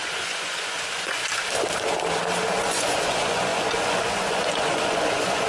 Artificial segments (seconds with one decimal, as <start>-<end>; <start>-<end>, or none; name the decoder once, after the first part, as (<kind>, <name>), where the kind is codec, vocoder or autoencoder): 0.0-1.2 (vocoder, Vocos); 2.7-5.5